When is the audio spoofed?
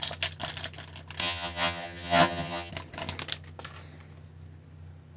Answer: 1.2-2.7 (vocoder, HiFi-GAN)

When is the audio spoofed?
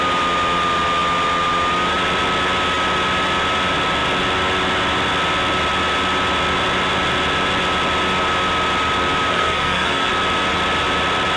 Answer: 9.3-10.1 (codec, SNAC)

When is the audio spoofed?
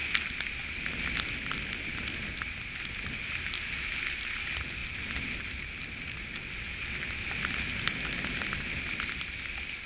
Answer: none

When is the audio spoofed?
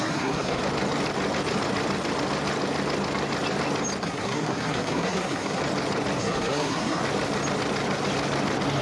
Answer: 0.0-0.6 (codec, SNAC); 4.0-5.6; 6.2-7.0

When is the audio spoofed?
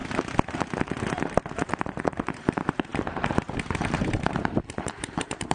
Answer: 1.8-5.5 (vocoder, BigVGAN v2)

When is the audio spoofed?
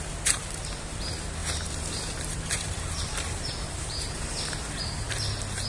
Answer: 1.4-4.8 (vocoder, BigVGAN v2)